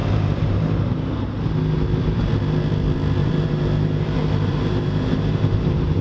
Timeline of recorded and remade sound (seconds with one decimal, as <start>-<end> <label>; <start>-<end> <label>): 0.0-0.8 remade; 0.8-3.2 recorded; 3.2-6.0 remade